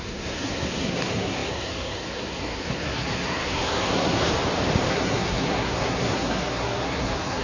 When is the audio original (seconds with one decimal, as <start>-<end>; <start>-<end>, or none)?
4.3-4.9